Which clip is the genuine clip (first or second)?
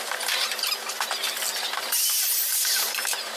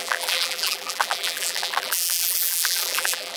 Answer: first